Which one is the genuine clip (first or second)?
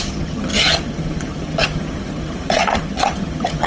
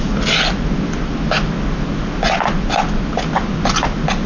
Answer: second